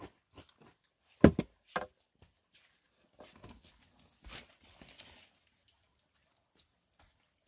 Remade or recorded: recorded